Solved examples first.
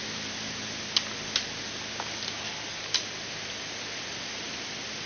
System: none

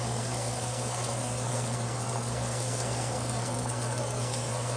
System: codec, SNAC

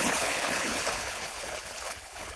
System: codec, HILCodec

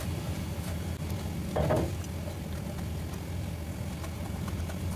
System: none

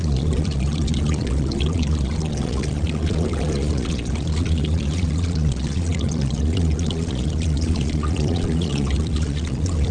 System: vocoder, Vocos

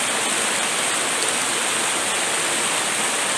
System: none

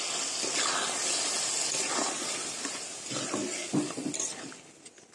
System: none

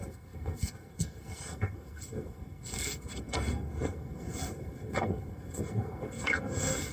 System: codec, SNAC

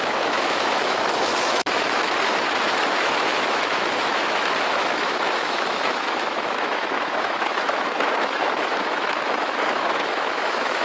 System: autoencoder, DAC-VAE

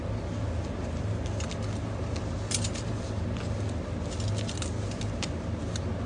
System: none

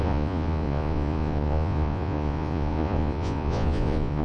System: vocoder, Vocos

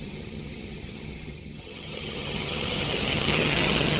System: vocoder, HiFi-GAN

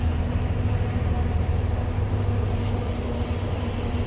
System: none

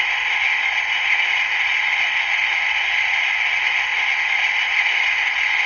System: none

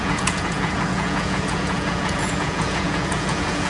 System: vocoder, Vocos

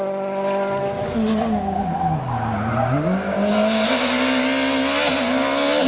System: none